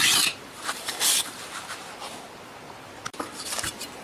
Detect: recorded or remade remade